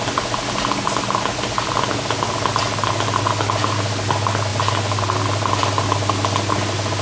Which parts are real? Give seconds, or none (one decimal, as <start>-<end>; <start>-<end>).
0.0-7.0